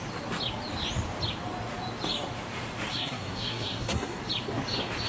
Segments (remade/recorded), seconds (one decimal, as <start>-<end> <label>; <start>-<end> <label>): 0.0-2.9 recorded; 2.9-4.2 remade; 4.2-5.1 recorded